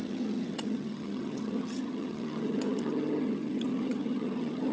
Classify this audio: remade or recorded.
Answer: remade